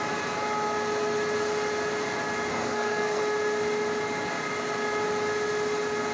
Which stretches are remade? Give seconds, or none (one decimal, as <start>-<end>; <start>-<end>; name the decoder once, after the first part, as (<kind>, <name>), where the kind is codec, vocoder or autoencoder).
2.5-3.2 (codec, SNAC)